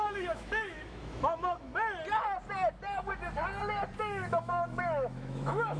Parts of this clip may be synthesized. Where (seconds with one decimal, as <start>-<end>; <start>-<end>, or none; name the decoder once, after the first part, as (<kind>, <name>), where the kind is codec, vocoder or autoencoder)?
0.0-1.7 (autoencoder, DAC-VAE); 4.0-5.8